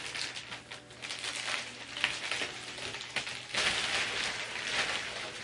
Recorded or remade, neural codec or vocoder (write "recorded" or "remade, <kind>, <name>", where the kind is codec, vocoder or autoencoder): recorded